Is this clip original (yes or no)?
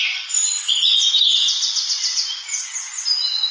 yes